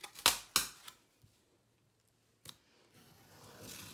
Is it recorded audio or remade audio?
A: recorded